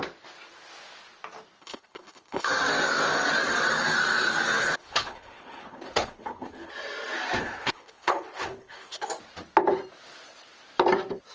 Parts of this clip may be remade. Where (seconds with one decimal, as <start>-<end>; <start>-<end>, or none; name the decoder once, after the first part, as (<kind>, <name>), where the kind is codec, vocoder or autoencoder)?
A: 1.6-2.5 (codec, HILCodec); 4.6-6.7; 7.4-9.1